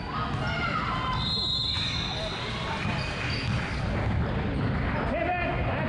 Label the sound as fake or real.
real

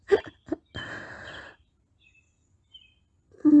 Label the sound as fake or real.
real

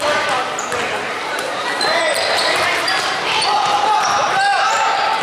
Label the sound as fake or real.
fake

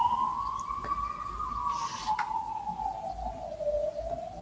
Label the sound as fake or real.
real